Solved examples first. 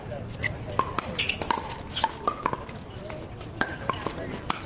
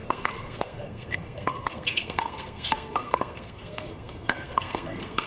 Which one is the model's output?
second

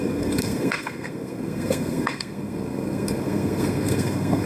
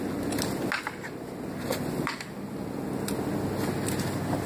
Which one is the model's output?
first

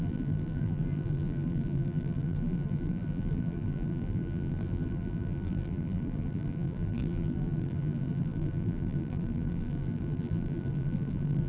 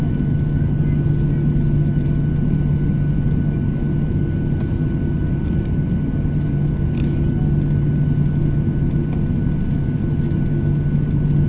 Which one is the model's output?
first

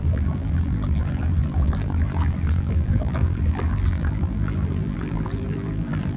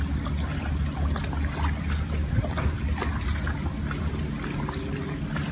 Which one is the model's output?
first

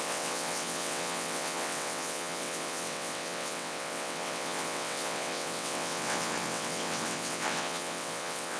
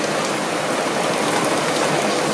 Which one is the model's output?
first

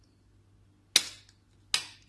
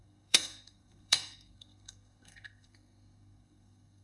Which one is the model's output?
second